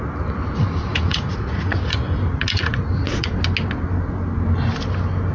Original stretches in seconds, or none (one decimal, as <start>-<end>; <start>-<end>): 0.0-0.9; 3.3-5.3